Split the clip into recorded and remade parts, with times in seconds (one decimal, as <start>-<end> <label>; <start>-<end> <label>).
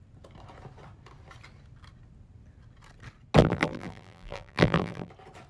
0.0-3.4 recorded; 3.4-5.1 remade; 5.1-5.5 recorded